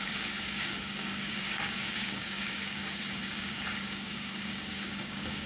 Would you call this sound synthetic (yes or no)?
yes